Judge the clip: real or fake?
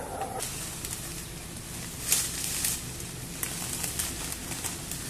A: real